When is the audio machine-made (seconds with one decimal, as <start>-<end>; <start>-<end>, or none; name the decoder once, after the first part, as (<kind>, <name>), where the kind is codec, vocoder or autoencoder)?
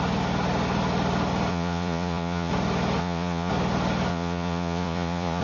1.5-2.5 (vocoder, Vocos); 3.0-3.5; 4.1-5.4